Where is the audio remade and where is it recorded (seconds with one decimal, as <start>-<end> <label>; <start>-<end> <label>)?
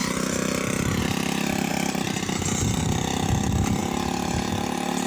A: 0.0-5.1 recorded